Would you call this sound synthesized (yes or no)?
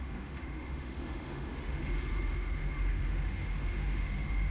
yes